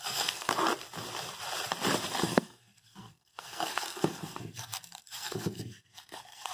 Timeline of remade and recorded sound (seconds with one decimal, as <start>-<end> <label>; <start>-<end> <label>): 0.0-0.5 remade; 0.5-2.2 recorded; 2.2-6.5 remade